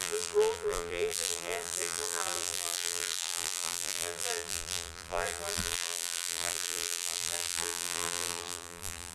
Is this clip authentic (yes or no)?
no